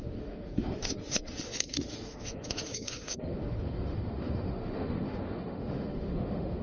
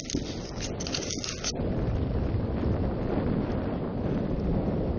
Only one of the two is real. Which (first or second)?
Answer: second